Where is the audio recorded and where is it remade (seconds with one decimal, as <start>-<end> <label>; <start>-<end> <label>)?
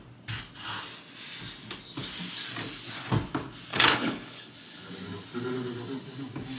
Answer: 0.0-3.7 recorded; 3.7-4.9 remade; 4.9-6.6 recorded